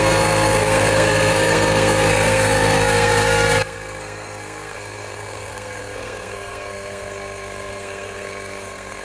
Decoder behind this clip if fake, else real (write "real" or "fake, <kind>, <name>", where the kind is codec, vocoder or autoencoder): fake, codec, SNAC